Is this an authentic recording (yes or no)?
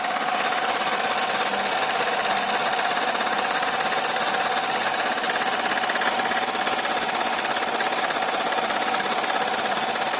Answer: yes